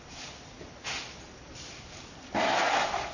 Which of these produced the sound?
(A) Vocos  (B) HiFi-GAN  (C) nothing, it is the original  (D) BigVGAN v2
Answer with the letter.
C